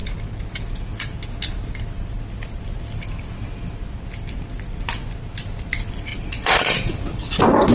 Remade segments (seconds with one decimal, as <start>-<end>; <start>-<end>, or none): none